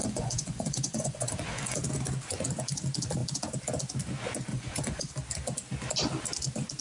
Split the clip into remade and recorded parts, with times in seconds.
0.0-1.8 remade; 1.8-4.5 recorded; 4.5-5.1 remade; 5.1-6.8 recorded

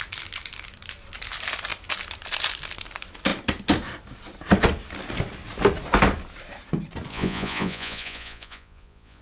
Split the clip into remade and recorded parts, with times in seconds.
0.0-7.1 recorded; 7.1-9.2 remade

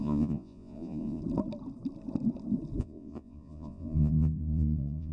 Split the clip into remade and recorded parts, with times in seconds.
0.0-1.2 remade; 1.2-2.8 recorded; 2.8-5.1 remade

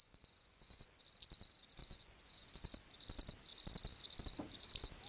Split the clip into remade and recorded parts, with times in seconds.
0.0-1.0 remade; 1.0-1.8 recorded; 1.8-2.5 remade; 2.5-5.1 recorded

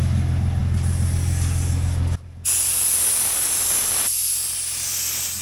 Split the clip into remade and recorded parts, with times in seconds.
0.0-5.4 recorded